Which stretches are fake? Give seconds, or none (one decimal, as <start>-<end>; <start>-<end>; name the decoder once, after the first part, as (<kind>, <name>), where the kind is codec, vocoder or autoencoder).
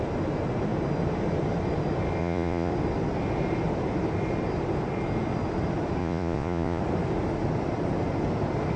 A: 2.2-2.7 (vocoder, Vocos); 6.0-6.8